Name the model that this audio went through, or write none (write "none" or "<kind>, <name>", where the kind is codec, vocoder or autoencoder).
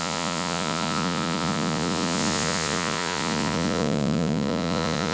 vocoder, Vocos